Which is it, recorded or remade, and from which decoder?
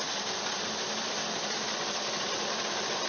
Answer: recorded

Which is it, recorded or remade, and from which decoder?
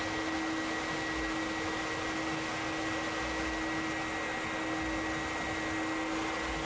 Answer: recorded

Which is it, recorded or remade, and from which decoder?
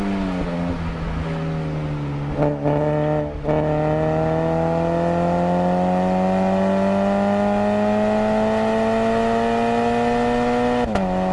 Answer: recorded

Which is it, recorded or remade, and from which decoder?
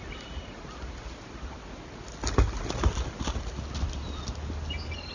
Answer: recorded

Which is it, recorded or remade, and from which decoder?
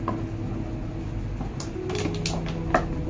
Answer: recorded